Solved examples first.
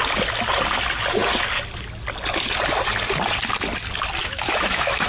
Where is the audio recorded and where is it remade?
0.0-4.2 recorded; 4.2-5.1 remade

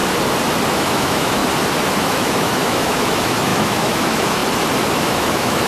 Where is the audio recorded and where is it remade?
0.0-0.7 recorded; 0.7-1.4 remade; 1.4-2.0 recorded; 2.0-4.4 remade; 4.4-5.0 recorded; 5.0-5.7 remade

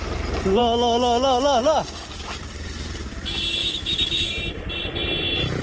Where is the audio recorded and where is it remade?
0.0-0.6 recorded; 0.6-1.6 remade; 1.6-3.6 recorded; 3.6-4.3 remade; 4.3-5.6 recorded

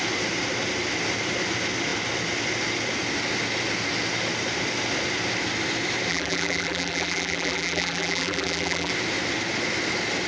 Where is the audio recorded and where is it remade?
0.0-6.1 recorded; 6.1-8.9 remade; 8.9-10.3 recorded

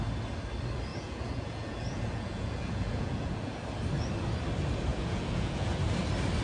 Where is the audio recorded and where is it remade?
0.0-0.9 recorded; 0.9-3.6 remade; 3.6-4.9 recorded; 4.9-5.8 remade; 5.8-6.4 recorded

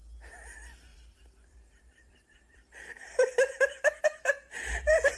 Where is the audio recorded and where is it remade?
0.0-0.9 recorded; 0.9-4.0 remade; 4.0-5.2 recorded

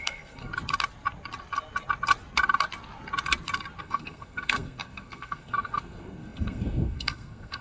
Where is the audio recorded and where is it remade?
0.0-0.5 remade; 0.5-3.8 recorded; 3.8-7.6 remade

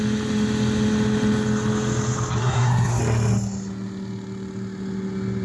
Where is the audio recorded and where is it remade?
0.0-2.4 recorded; 2.4-3.0 remade; 3.0-5.4 recorded